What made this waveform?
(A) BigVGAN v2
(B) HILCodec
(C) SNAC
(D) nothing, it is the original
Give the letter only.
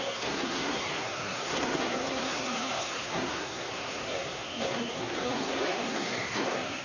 C